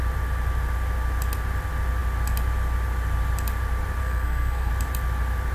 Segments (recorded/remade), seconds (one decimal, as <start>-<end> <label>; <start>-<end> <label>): 0.0-4.0 recorded; 4.0-4.7 remade; 4.7-5.5 recorded

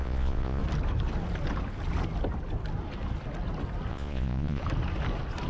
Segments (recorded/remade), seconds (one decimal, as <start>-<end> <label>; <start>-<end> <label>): 0.0-0.6 remade; 0.6-3.9 recorded; 3.9-4.6 remade; 4.6-5.5 recorded

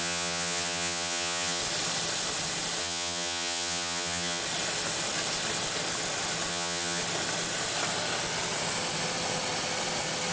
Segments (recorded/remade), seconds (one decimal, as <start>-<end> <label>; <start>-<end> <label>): 0.0-1.6 remade; 1.6-2.8 recorded; 2.8-4.4 remade; 4.4-6.5 recorded; 6.5-7.0 remade; 7.0-10.3 recorded

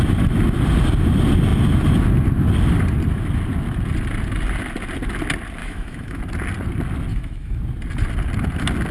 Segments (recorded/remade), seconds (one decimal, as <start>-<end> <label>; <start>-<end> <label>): 0.0-5.6 recorded; 5.6-6.2 remade; 6.2-7.1 recorded; 7.1-7.6 remade; 7.6-8.9 recorded

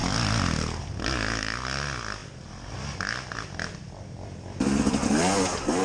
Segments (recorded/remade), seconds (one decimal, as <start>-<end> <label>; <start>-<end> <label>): 0.0-5.8 recorded

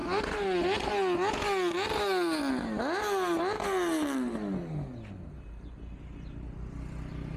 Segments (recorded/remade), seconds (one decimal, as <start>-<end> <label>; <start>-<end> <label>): 0.0-7.4 recorded